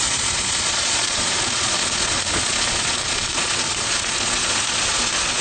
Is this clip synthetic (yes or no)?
yes